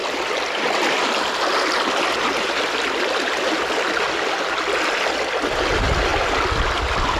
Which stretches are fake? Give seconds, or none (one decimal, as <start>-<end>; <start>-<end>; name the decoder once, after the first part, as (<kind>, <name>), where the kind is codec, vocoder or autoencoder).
none